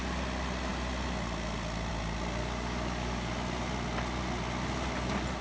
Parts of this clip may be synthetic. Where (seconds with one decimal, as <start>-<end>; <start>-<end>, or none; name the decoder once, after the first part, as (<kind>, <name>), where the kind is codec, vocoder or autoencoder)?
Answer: 2.4-3.3 (codec, DAC)

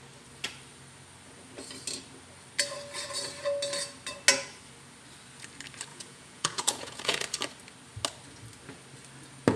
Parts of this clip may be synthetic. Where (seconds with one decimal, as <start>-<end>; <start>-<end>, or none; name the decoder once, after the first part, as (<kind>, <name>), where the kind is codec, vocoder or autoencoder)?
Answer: 5.9-7.2 (vocoder, Vocos)

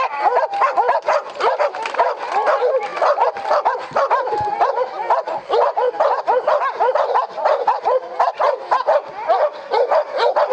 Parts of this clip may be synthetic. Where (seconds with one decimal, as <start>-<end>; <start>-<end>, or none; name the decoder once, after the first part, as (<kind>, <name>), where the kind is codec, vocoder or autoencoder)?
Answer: none

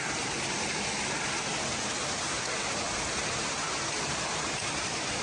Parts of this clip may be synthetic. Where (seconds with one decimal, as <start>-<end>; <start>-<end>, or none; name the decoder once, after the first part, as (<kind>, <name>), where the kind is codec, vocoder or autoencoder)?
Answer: none

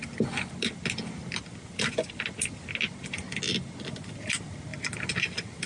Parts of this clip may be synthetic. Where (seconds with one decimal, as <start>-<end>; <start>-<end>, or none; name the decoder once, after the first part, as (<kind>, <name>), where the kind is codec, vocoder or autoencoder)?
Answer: none

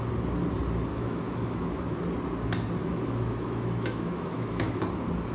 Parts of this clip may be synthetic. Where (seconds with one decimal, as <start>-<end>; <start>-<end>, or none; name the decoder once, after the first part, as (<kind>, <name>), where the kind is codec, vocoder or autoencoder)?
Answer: 0.9-2.0 (autoencoder, DAC-VAE); 2.8-4.8

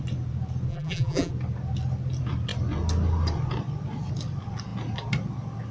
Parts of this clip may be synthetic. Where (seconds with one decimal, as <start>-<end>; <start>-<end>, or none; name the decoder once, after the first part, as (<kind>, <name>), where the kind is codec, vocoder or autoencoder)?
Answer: 0.7-1.3 (vocoder, BigVGAN v2)

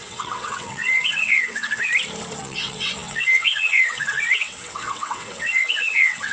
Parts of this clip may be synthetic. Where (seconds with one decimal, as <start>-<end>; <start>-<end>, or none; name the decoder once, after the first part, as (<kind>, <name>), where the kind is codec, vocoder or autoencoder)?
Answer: 0.0-1.9 (vocoder, WaveNeXt); 2.4-6.3